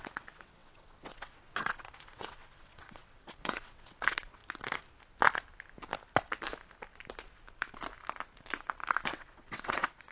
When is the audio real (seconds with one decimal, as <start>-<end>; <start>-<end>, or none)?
4.4-9.1